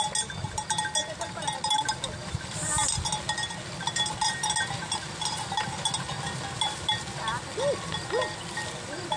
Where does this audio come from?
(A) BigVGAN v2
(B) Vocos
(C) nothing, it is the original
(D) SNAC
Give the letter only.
C